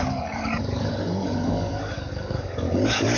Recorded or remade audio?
remade